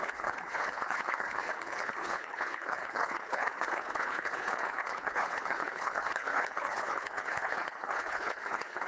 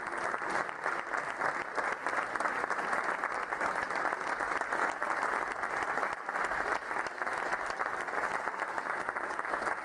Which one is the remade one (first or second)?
first